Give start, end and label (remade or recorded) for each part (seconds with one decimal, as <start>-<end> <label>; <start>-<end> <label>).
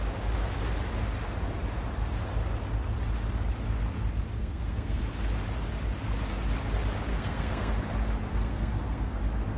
0.0-4.4 recorded; 4.4-5.0 remade; 5.0-7.1 recorded; 7.1-7.7 remade; 7.7-8.3 recorded; 8.3-9.2 remade; 9.2-9.6 recorded